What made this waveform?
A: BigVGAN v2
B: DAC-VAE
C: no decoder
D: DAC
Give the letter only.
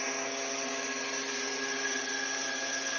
C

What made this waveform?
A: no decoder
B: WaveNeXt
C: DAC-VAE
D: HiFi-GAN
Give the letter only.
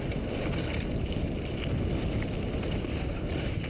A